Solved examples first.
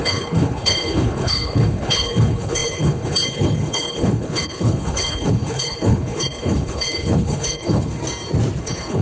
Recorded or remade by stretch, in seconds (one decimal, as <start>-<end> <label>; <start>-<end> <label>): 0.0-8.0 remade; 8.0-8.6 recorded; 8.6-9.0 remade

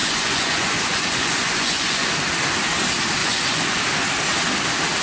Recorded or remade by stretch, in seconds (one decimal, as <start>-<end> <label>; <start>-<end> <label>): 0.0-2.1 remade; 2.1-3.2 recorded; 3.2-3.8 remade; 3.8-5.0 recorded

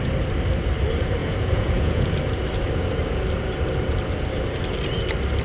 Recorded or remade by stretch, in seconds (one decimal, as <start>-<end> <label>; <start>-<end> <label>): 0.0-1.2 recorded; 1.2-2.1 remade; 2.1-5.4 recorded